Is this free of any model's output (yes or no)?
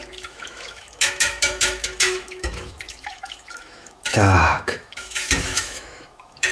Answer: no